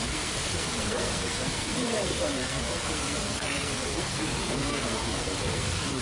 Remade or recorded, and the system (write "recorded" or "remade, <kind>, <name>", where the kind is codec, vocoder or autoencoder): remade, codec, SNAC